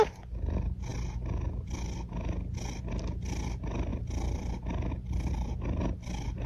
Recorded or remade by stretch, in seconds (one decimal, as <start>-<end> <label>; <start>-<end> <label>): 0.0-6.5 recorded